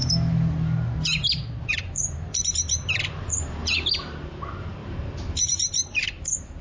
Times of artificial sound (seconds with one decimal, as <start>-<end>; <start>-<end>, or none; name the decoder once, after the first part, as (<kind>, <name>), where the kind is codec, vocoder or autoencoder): 1.7-6.6 (vocoder, BigVGAN v2)